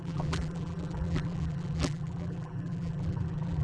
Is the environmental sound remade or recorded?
remade